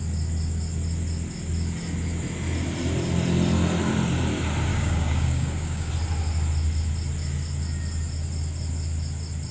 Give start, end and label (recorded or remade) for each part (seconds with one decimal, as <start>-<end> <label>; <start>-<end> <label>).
0.0-4.7 recorded; 4.7-5.9 remade; 5.9-9.5 recorded